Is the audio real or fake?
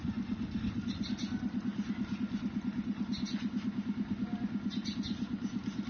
real